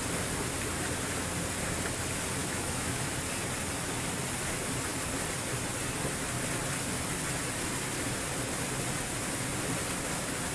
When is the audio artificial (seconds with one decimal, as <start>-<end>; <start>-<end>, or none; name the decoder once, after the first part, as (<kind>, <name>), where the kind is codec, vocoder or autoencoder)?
2.4-3.0 (autoencoder, DAC-VAE)